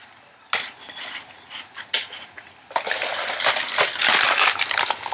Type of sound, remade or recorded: recorded